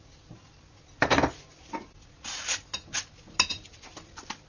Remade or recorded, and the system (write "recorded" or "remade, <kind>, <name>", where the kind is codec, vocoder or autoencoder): recorded